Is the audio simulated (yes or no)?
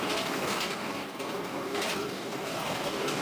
yes